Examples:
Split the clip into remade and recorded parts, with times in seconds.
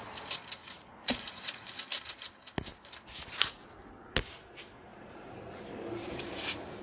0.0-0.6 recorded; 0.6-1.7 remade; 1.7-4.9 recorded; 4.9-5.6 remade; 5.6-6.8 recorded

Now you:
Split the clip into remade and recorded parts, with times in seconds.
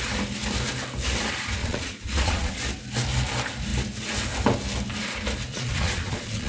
0.0-1.6 recorded; 1.6-2.6 remade; 2.6-5.5 recorded; 5.5-6.5 remade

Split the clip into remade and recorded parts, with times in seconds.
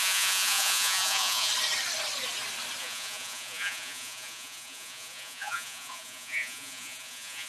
0.0-1.5 remade; 1.5-2.8 recorded; 2.8-7.5 remade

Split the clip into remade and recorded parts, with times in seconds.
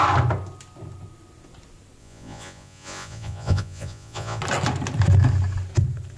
0.0-2.0 recorded; 2.0-4.4 remade; 4.4-6.2 recorded